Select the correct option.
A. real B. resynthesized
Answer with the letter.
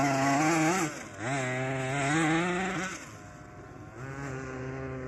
A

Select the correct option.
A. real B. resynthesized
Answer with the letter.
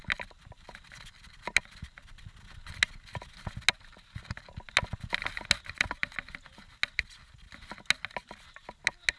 A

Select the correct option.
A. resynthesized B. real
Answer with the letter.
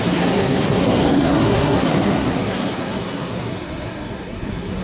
A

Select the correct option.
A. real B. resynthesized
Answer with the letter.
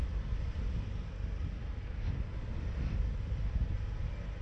A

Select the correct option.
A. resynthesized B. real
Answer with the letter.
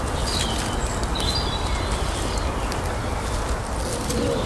B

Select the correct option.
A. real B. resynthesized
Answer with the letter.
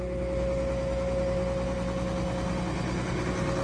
A